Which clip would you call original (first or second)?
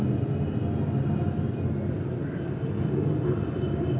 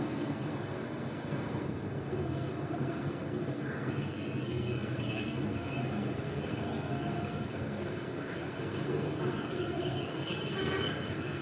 first